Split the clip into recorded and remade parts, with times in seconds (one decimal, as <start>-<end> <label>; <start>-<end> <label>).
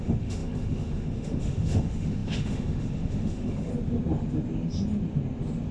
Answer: 0.0-3.7 remade; 3.7-5.7 recorded